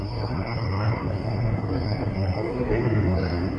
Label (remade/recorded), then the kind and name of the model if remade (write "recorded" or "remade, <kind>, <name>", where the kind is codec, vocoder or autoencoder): remade, codec, SNAC